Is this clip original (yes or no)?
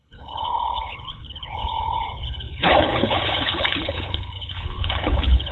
no